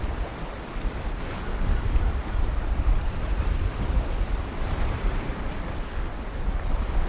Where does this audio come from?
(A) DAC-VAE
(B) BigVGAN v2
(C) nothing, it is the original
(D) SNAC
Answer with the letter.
B